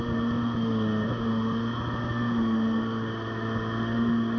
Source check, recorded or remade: recorded